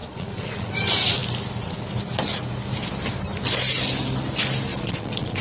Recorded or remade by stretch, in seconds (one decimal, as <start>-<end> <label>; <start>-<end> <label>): 0.0-0.7 remade; 0.7-4.7 recorded; 4.7-5.4 remade